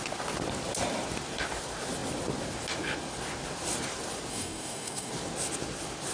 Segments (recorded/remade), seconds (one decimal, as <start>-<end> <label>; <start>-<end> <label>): 0.0-4.3 recorded; 4.3-5.1 remade; 5.1-6.1 recorded